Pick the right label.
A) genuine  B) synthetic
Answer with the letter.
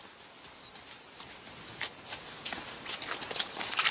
A